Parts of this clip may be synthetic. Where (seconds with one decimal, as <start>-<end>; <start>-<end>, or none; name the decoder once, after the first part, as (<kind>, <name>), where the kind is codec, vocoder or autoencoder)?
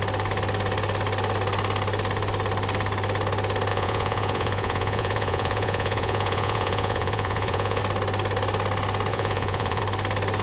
3.7-7.8 (vocoder, Vocos); 9.1-9.8